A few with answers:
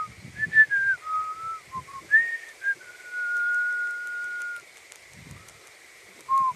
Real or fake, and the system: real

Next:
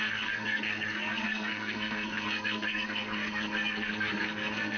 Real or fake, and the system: fake, codec, SNAC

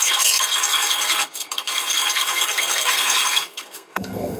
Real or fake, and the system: fake, codec, SNAC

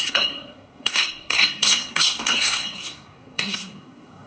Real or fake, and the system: fake, codec, SNAC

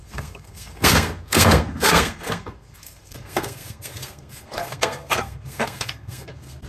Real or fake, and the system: fake, codec, SNAC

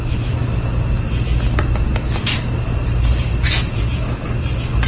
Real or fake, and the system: real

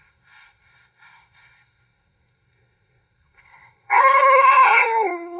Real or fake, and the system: fake, codec, SNAC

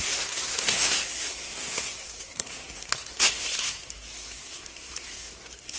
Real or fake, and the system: fake, codec, SNAC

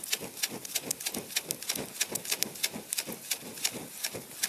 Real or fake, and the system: real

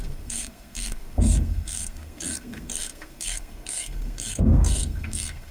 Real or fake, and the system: fake, codec, SNAC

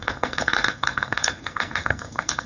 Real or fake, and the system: fake, codec, SNAC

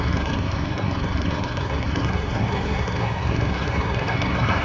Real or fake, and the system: fake, codec, SNAC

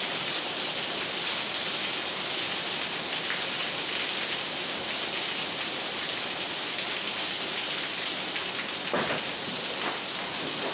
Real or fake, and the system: real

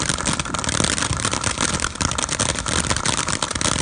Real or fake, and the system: real